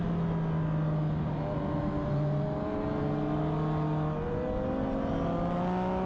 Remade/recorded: recorded